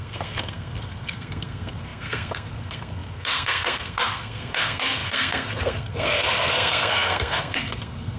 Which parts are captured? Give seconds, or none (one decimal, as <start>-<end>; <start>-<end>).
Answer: none

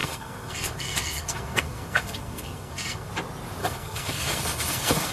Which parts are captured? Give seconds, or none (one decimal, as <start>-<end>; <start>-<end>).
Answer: 3.1-3.6

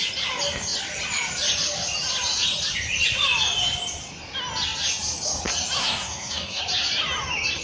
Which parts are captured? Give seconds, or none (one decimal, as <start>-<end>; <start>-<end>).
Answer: 0.0-5.8; 6.6-7.6

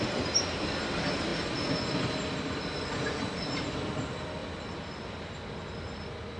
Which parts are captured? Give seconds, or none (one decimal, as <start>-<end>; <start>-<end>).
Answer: 0.0-6.4

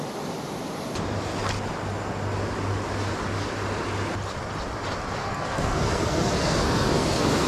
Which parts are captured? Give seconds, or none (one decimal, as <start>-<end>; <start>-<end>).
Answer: 0.0-5.2